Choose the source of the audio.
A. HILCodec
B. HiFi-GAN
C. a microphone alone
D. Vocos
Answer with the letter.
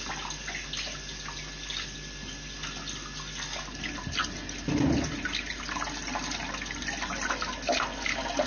C